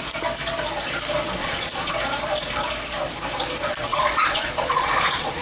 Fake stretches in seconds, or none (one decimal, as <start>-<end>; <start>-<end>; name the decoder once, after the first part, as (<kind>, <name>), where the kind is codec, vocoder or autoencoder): 1.4-1.9 (vocoder, Vocos); 3.9-5.4